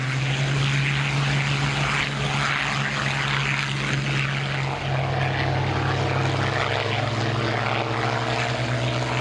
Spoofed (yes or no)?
no